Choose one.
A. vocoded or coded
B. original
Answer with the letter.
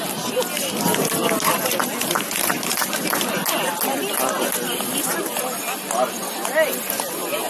B